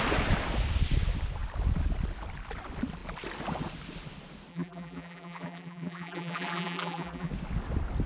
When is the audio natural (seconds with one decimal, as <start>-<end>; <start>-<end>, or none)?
0.0-4.5; 7.3-8.1